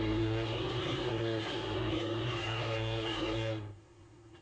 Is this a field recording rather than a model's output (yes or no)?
no